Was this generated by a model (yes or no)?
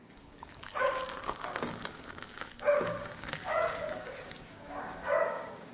yes